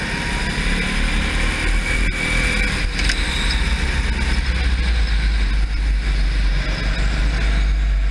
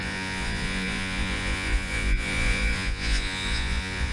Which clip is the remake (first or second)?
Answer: second